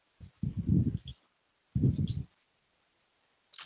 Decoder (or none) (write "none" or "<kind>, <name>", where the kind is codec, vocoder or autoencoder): none